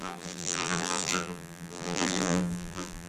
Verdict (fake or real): fake